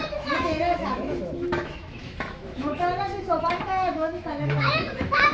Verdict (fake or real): fake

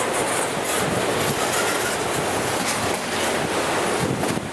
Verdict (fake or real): real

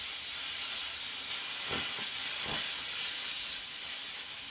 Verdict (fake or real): real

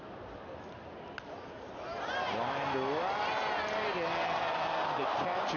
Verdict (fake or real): real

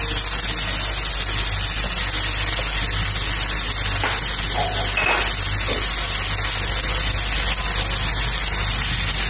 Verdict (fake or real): real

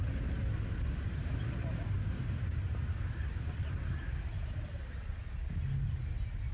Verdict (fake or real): real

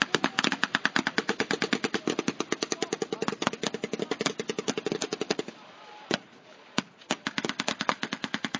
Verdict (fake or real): real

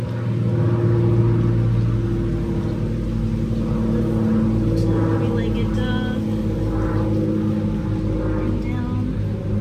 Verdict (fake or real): real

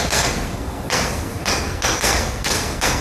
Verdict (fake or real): fake